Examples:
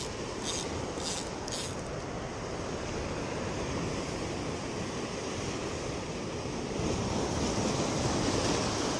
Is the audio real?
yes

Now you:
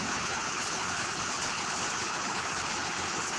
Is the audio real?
no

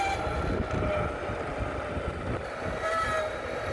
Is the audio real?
yes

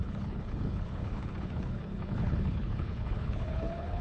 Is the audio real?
no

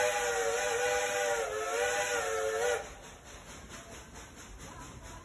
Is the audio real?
yes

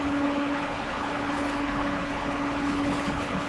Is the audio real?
no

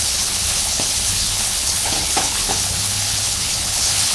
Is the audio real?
no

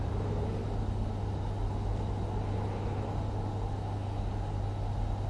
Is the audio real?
yes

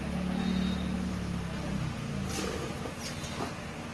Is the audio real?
yes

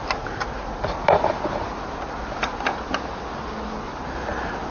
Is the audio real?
yes